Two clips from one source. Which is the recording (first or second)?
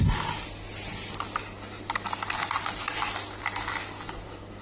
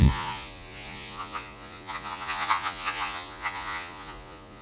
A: first